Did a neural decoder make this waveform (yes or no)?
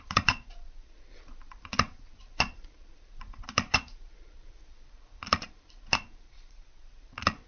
yes